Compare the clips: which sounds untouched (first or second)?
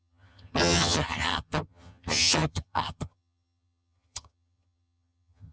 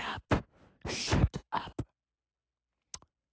second